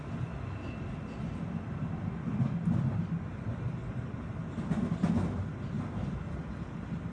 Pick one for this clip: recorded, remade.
recorded